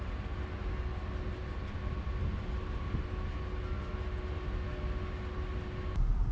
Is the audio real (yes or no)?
yes